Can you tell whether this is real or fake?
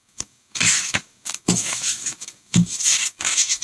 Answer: fake